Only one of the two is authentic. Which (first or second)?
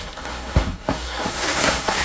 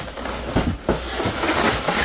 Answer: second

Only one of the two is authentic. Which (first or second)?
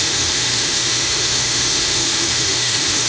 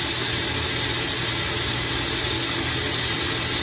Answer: second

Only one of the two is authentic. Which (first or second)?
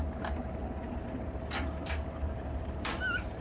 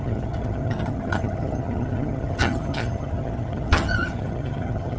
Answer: first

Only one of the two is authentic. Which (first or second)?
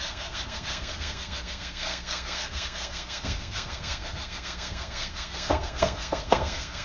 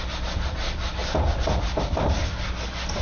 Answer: second